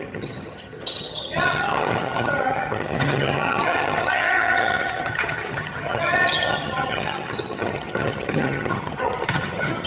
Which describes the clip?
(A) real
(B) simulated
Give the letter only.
B